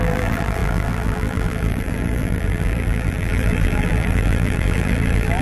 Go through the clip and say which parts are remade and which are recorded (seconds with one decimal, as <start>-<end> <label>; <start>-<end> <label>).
0.0-5.4 remade